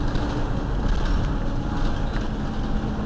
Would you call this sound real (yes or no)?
yes